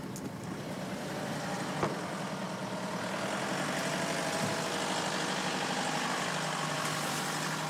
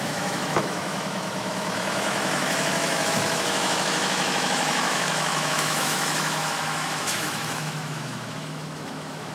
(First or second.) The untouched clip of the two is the first